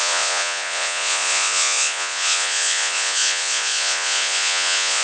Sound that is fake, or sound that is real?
fake